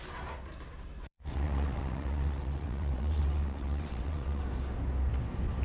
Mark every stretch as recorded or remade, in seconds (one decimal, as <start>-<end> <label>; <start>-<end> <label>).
0.0-1.0 recorded; 1.0-4.4 remade; 4.4-5.6 recorded